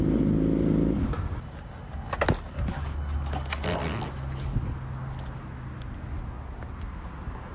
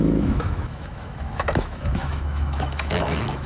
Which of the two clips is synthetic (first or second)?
second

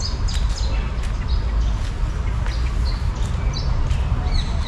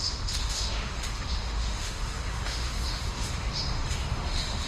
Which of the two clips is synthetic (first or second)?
second